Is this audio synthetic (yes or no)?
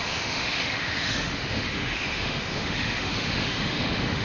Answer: yes